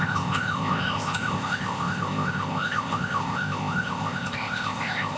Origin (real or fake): fake